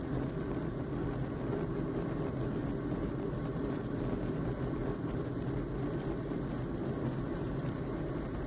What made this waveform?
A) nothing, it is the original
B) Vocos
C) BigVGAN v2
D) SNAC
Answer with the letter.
A